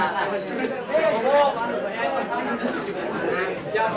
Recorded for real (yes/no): yes